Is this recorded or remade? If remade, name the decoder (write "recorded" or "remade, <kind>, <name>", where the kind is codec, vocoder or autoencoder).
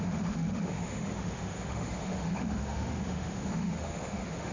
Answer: remade, autoencoder, DAC-VAE